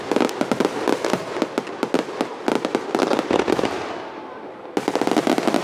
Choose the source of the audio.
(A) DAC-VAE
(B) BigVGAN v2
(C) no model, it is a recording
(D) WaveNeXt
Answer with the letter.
C